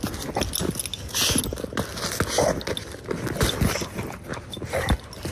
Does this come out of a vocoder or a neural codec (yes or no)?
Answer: no